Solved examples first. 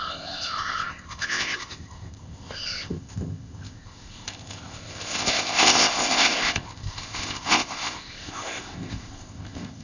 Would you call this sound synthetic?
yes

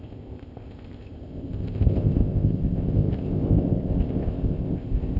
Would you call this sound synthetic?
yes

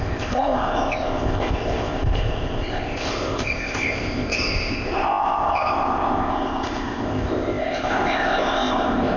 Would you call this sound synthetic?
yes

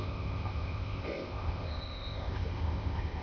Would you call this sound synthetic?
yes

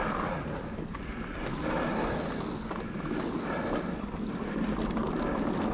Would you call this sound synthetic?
no